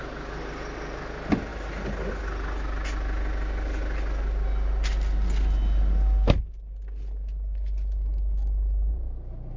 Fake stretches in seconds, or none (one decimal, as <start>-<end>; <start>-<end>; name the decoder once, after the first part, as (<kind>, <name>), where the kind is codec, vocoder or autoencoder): none